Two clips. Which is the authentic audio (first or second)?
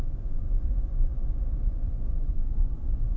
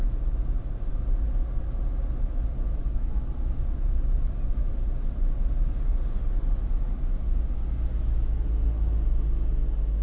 second